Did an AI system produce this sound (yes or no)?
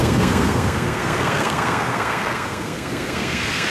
yes